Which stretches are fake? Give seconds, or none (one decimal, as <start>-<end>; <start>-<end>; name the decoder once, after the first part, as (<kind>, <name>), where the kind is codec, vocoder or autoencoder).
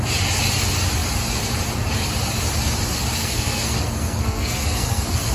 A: 3.2-5.3 (codec, SNAC)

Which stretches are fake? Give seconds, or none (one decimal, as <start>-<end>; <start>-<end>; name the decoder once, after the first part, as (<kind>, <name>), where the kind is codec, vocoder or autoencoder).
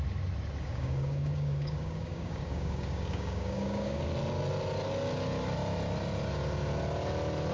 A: 0.7-4.0 (codec, DAC)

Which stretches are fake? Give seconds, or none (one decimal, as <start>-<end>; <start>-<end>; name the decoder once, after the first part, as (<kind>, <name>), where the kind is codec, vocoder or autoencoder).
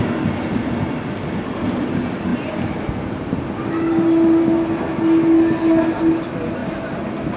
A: none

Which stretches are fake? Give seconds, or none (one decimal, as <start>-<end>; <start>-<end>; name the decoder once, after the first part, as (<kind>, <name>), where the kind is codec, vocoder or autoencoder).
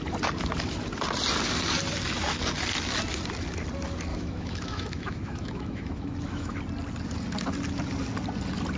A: 4.1-6.6 (autoencoder, DAC-VAE)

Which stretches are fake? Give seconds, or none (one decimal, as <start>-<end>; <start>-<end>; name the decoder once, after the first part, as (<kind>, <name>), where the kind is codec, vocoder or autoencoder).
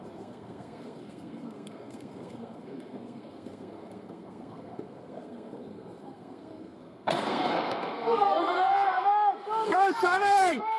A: 0.0-10.8 (codec, SNAC)